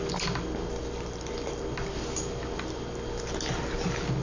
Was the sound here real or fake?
real